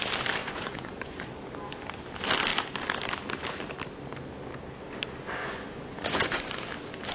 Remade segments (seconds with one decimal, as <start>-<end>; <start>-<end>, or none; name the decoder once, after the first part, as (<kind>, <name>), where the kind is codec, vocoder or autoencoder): 0.4-1.3 (vocoder, Vocos); 5.4-6.6

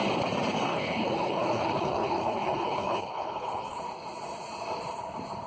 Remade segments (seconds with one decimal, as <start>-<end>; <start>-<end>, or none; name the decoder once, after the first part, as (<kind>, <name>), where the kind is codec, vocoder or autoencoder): 0.7-3.8 (codec, HILCodec)

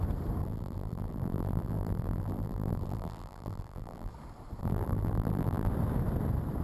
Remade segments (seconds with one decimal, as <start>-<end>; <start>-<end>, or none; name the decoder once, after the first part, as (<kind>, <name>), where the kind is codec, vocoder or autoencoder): 0.4-4.1 (vocoder, BigVGAN v2); 4.6-5.7